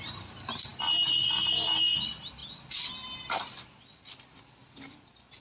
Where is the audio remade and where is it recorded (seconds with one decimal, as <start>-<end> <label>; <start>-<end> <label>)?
0.0-5.4 recorded